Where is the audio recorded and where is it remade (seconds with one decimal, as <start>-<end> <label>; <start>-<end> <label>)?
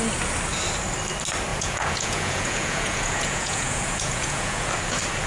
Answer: 0.0-1.5 recorded; 1.5-4.7 remade; 4.7-5.3 recorded